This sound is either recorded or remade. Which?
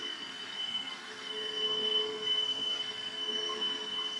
remade